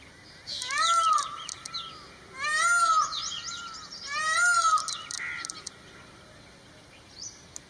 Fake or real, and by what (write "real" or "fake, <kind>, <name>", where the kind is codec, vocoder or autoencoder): real